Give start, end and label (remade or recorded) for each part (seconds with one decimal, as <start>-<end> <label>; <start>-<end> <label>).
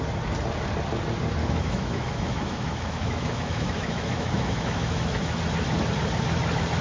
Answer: 0.0-1.4 recorded; 1.4-5.4 remade; 5.4-6.8 recorded